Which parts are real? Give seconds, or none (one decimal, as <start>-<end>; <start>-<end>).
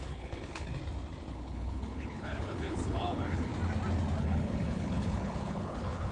0.7-1.3; 3.5-4.2